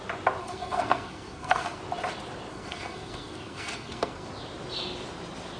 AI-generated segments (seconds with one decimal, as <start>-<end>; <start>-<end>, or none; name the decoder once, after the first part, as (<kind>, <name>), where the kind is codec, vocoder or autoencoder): 0.4-1.8 (codec, SNAC); 2.5-4.3